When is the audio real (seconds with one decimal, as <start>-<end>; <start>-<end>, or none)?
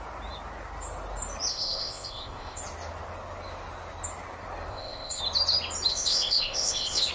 0.0-1.5; 2.6-4.7; 5.2-5.9